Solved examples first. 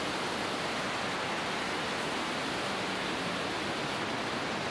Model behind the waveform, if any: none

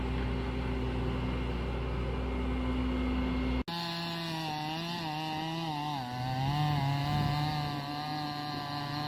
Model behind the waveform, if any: none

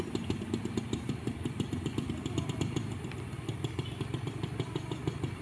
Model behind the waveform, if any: none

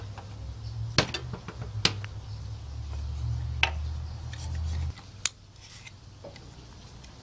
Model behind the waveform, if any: none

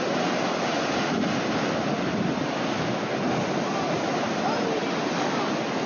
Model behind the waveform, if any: none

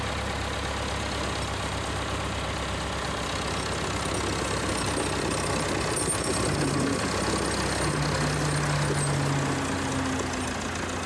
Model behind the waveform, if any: none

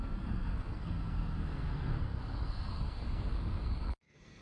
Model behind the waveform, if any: codec, SNAC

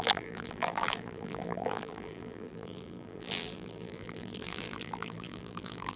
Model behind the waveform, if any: vocoder, BigVGAN v2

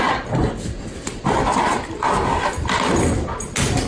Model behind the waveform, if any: none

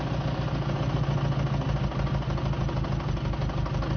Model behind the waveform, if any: none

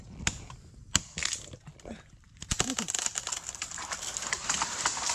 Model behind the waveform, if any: vocoder, BigVGAN v2